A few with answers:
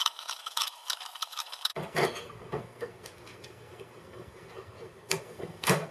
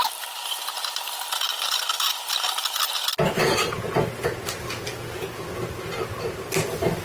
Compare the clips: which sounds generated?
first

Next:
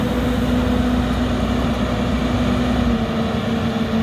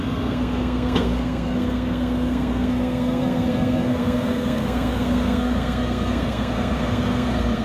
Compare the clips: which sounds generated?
second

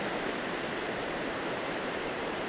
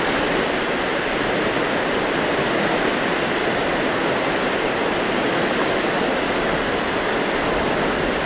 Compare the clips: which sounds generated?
first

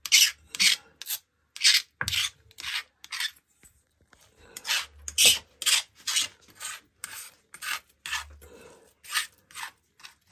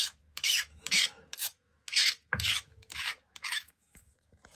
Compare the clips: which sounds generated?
second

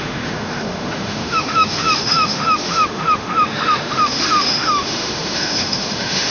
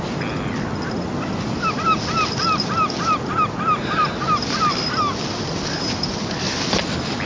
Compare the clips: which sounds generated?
first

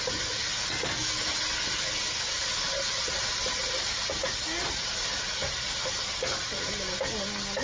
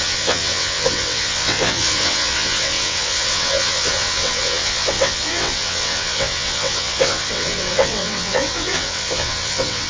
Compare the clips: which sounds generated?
second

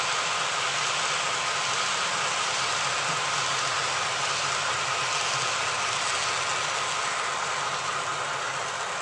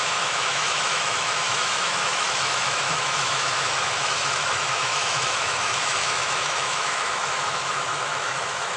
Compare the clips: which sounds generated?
second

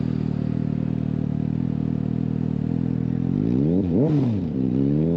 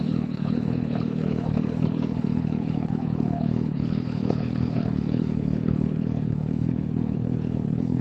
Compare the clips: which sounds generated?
second